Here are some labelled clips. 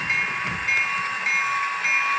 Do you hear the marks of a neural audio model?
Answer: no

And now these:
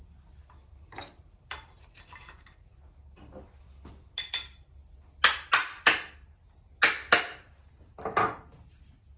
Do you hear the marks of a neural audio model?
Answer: no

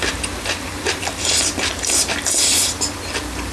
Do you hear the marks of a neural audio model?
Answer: yes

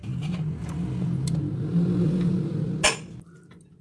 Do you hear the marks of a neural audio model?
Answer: no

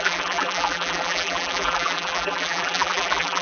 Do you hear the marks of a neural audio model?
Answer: yes